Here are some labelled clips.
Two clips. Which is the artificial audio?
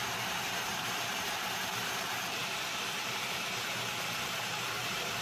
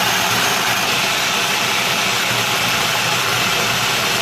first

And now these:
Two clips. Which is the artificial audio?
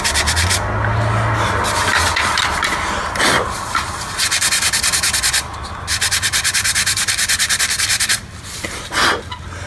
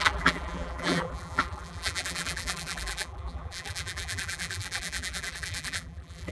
second